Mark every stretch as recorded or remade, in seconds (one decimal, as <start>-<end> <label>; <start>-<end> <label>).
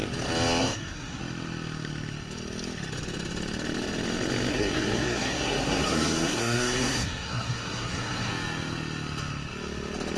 0.0-0.6 recorded; 0.6-1.2 remade; 1.2-4.5 recorded; 4.5-8.3 remade; 8.3-10.2 recorded